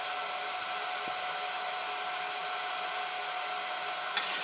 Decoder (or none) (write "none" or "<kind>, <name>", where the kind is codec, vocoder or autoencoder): none